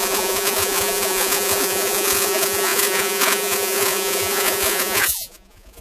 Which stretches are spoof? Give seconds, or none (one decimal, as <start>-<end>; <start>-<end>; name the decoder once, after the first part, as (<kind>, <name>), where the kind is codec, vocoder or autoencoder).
0.0-5.8 (vocoder, Vocos)